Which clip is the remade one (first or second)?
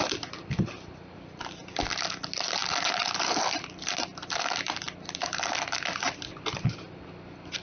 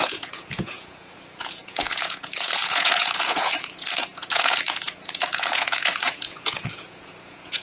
second